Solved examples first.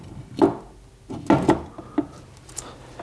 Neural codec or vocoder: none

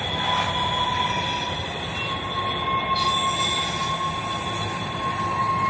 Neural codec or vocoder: none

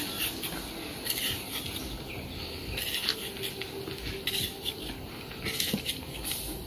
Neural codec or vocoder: none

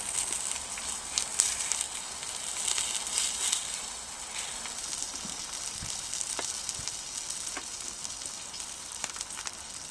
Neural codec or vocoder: none